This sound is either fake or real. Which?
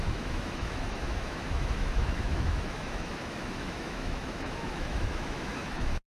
fake